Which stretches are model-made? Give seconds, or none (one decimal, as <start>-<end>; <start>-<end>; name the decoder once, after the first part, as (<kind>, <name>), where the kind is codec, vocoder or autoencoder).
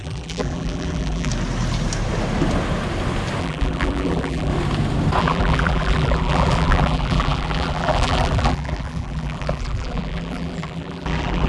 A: 0.0-1.3 (vocoder, BigVGAN v2); 3.4-4.5; 5.2-11.5